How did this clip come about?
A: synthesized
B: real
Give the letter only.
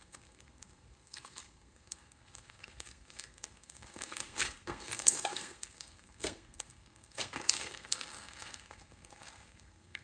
A